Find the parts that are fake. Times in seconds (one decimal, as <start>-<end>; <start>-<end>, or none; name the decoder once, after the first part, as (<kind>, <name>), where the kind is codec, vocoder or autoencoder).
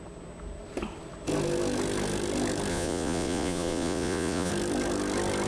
2.7-4.5 (vocoder, Vocos)